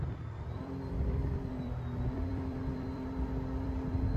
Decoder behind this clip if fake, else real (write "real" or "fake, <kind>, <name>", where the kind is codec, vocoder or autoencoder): fake, vocoder, BigVGAN v2